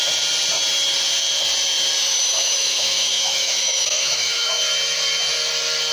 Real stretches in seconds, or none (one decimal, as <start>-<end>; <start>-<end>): 0.0-2.0; 4.6-5.9